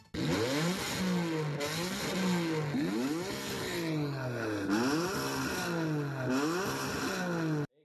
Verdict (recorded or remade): recorded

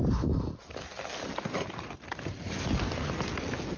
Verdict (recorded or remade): recorded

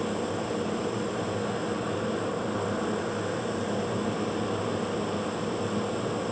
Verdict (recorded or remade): recorded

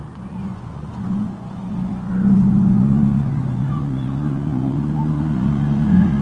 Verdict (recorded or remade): remade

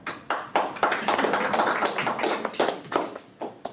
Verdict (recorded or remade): recorded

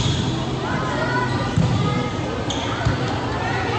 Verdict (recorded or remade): recorded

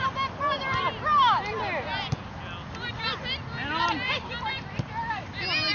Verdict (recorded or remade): recorded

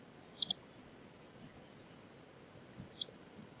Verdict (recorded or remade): recorded